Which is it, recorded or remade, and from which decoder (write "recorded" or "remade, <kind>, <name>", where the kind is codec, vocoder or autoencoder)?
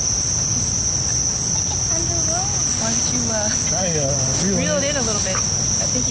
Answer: recorded